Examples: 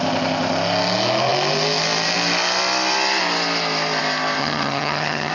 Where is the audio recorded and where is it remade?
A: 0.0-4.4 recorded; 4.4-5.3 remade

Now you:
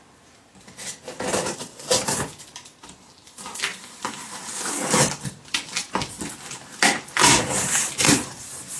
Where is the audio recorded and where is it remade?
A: 0.0-3.7 recorded; 3.7-8.8 remade